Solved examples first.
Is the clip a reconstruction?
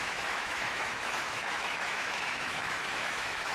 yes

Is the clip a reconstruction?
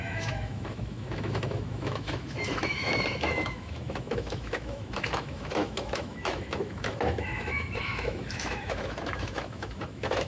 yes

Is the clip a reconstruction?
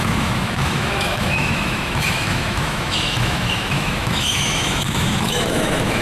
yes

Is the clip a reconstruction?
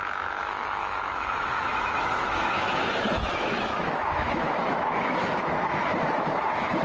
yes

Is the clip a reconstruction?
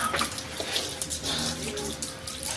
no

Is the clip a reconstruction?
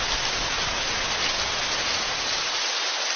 no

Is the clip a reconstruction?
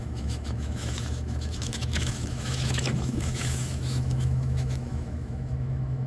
yes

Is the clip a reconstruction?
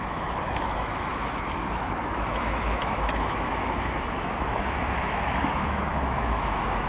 yes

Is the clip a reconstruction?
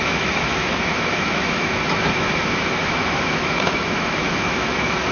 yes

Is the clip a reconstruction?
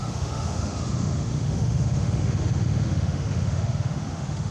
yes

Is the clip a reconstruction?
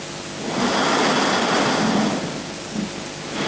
no